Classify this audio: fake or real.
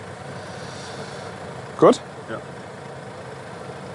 fake